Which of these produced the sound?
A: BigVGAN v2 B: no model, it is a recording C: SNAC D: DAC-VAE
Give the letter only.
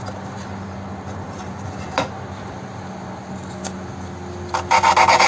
B